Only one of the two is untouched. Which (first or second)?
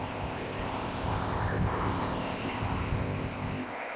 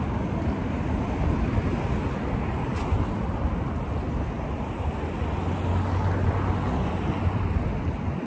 second